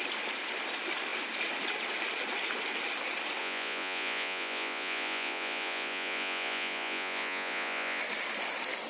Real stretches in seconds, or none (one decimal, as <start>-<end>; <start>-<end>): 0.0-3.4; 8.0-8.9